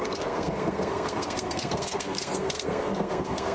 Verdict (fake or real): fake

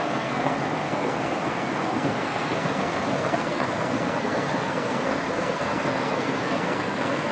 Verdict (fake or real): fake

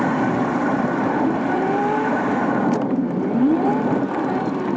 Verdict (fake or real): fake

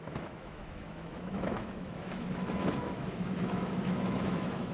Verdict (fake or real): fake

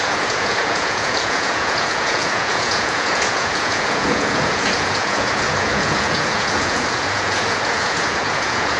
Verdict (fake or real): fake